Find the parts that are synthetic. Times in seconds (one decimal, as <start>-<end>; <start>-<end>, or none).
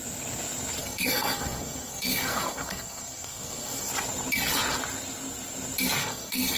0.8-3.9; 6.0-6.6